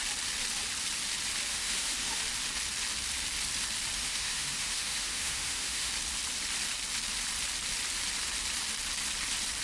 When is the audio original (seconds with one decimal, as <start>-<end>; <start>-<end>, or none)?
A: 0.0-1.5; 2.2-4.0; 5.9-9.6